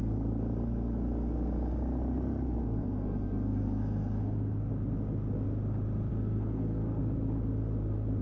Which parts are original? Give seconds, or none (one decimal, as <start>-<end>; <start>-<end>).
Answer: 0.0-2.6; 4.7-6.1; 7.0-8.2